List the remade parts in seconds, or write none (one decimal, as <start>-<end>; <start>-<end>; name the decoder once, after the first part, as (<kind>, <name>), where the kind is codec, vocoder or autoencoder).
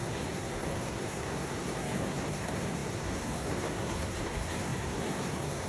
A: 0.0-5.7 (codec, SNAC)